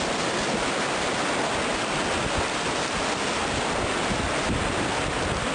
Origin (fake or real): real